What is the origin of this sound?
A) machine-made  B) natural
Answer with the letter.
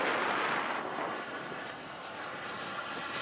B